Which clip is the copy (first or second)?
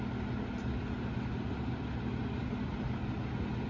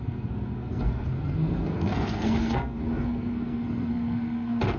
second